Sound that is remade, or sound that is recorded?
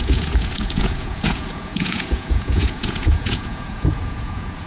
remade